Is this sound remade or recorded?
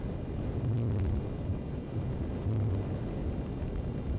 recorded